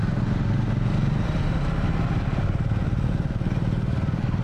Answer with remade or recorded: recorded